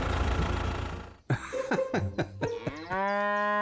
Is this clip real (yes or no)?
yes